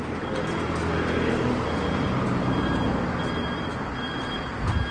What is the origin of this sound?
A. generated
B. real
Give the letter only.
B